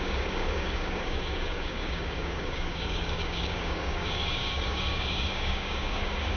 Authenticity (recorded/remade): remade